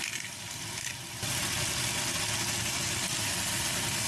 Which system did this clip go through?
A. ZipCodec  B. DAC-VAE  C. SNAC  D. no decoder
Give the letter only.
D